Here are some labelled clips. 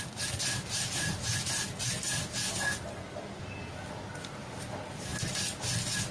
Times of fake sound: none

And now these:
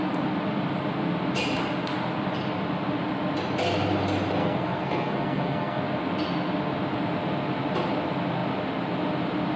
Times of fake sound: 4.4-5.8

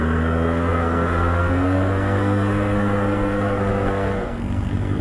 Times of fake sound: 0.0-5.0

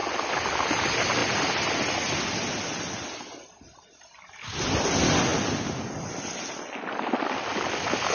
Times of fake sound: none